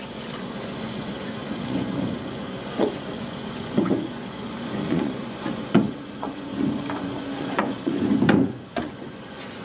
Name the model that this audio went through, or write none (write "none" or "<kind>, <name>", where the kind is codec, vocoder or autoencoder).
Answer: vocoder, Vocos